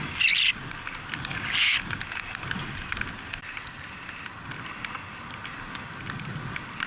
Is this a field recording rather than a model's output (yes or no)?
yes